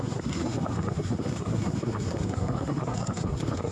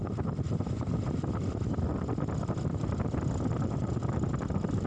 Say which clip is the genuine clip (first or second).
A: second